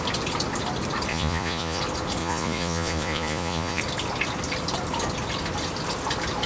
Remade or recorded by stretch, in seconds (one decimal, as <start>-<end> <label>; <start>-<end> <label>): 0.0-1.1 recorded; 1.1-1.8 remade; 1.8-2.2 recorded; 2.2-3.8 remade; 3.8-6.5 recorded